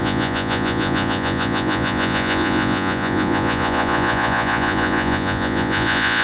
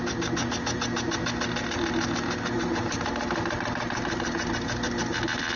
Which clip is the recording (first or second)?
second